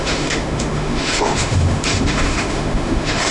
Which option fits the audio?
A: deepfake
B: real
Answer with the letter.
A